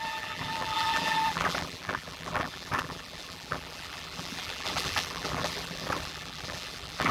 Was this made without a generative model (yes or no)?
no